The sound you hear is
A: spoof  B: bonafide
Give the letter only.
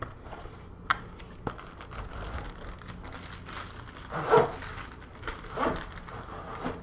B